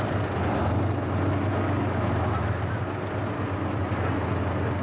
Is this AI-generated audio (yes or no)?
no